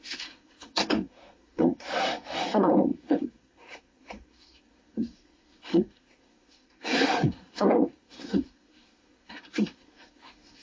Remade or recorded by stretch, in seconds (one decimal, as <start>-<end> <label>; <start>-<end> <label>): 0.0-10.6 remade